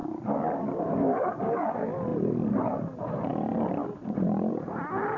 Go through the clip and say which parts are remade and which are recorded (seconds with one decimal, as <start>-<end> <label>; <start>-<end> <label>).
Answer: 0.0-1.2 remade; 1.2-2.1 recorded; 2.1-2.6 remade; 2.6-3.3 recorded; 3.3-4.5 remade; 4.5-5.2 recorded